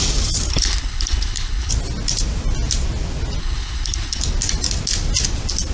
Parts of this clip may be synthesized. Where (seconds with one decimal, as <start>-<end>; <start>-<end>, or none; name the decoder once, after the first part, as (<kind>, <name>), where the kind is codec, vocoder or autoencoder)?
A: 0.5-1.7 (codec, HILCodec); 3.4-4.2